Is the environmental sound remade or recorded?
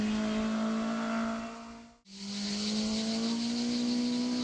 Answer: recorded